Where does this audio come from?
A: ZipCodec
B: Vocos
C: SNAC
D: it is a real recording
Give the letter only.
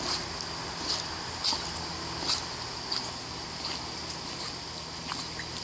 D